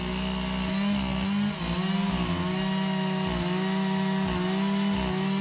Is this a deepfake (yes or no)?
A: no